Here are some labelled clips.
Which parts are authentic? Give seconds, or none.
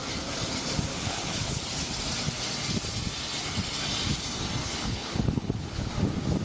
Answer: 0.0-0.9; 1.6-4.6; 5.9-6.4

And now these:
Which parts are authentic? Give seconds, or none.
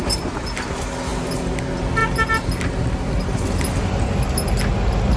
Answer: 0.0-5.2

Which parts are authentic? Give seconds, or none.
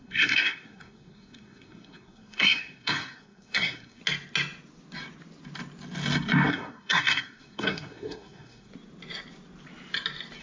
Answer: 4.0-6.5; 8.7-10.4